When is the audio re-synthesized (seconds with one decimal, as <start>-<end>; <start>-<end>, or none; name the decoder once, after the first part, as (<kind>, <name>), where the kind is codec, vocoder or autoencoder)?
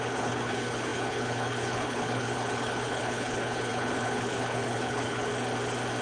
0.0-5.3 (codec, HILCodec)